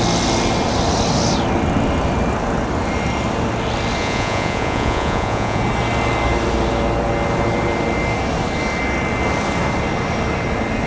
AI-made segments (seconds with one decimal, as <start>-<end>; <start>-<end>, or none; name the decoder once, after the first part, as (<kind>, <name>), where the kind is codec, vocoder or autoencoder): 4.0-5.6 (vocoder, Vocos)